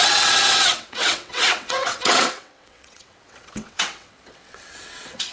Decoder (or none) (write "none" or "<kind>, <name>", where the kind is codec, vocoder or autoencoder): vocoder, WaveNeXt